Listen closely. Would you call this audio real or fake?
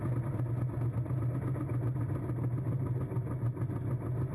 real